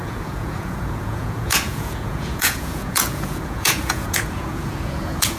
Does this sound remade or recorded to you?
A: remade